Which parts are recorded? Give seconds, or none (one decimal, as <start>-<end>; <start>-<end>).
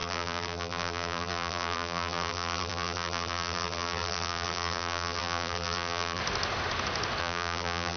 6.2-7.2